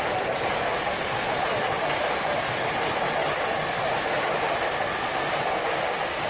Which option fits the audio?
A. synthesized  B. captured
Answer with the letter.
B